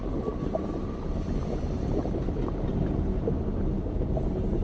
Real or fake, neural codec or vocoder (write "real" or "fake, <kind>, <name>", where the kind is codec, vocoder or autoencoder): real